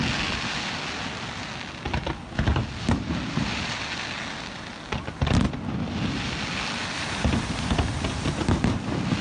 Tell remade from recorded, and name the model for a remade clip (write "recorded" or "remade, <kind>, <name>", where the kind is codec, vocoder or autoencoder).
recorded